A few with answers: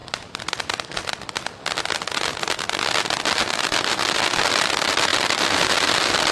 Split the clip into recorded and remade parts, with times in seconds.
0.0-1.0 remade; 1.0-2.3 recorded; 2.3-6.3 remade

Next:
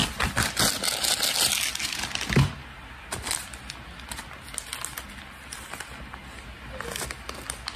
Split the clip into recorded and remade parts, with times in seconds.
0.0-7.8 recorded

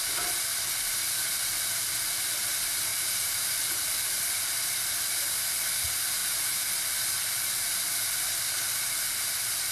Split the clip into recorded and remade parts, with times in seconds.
0.0-2.9 recorded; 2.9-4.0 remade; 4.0-9.7 recorded